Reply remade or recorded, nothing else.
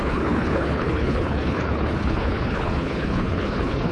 remade